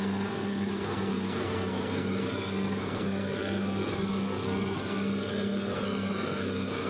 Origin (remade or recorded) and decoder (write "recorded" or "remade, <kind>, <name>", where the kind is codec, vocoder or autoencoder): remade, codec, SNAC